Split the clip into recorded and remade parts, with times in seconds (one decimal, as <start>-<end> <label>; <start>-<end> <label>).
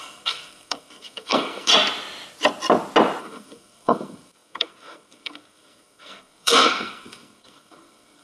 0.0-1.7 remade; 1.7-3.2 recorded; 3.2-8.2 remade